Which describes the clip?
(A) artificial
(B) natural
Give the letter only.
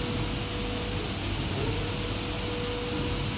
B